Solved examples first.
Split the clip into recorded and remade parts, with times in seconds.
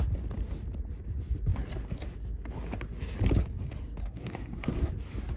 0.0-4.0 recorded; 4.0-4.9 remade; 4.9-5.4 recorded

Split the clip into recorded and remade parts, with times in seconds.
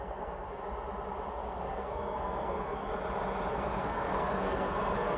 0.0-0.6 remade; 0.6-1.3 recorded; 1.3-2.9 remade; 2.9-3.5 recorded; 3.5-5.2 remade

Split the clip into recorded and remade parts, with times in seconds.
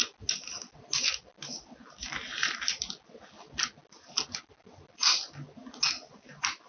0.0-6.7 recorded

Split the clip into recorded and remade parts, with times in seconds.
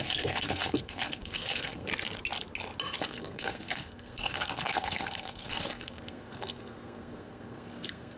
0.0-1.9 remade; 1.9-3.0 recorded; 3.0-8.2 remade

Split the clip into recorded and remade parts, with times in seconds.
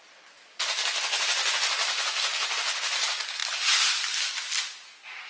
0.0-5.3 recorded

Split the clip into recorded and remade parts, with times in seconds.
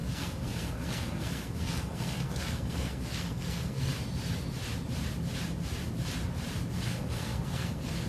0.0-3.9 remade; 3.9-6.7 recorded; 6.7-8.1 remade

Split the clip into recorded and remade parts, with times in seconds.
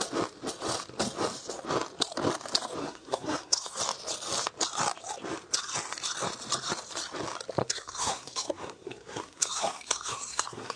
0.0-2.8 recorded; 2.8-3.8 remade; 3.8-7.6 recorded; 7.6-10.8 remade